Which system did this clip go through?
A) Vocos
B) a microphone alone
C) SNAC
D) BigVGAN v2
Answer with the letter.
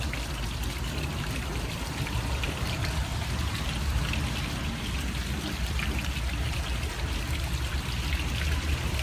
B